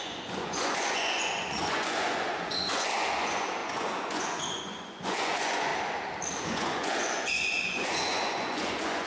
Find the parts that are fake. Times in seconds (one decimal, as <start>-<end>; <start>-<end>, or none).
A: 0.0-5.7; 6.4-9.1